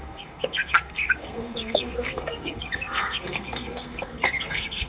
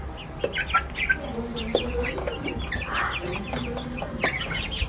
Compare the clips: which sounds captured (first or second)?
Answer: second